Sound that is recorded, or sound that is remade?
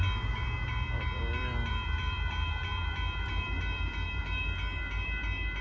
remade